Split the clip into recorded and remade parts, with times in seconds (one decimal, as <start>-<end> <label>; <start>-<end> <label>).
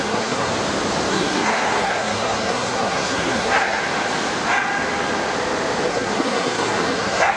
0.0-0.5 remade; 0.5-1.1 recorded; 1.1-3.8 remade; 3.8-5.9 recorded; 5.9-7.4 remade